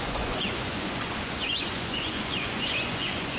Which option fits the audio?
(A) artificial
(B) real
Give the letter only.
A